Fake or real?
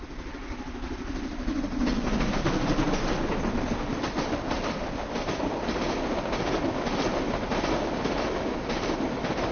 real